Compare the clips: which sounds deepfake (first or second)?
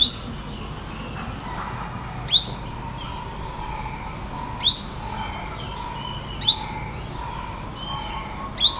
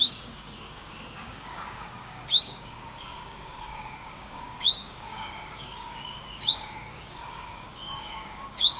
second